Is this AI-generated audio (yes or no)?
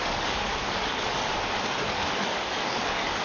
yes